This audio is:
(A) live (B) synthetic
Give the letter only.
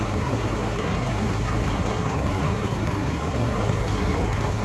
B